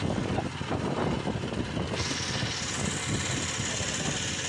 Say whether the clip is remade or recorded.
recorded